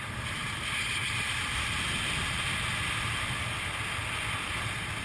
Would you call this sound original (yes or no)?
no